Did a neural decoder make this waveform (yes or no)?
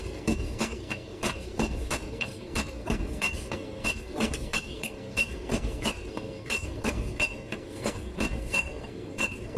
yes